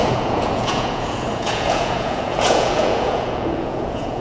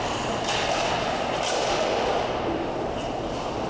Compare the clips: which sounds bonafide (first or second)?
second